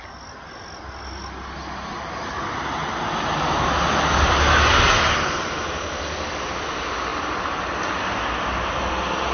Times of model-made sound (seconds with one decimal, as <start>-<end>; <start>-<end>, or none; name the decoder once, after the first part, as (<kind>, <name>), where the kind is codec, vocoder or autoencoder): none